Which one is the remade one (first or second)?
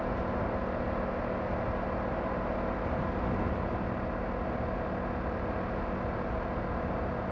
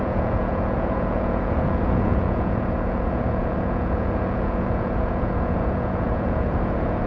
second